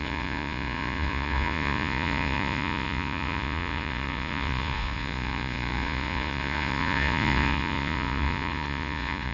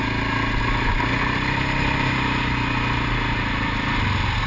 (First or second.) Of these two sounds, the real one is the second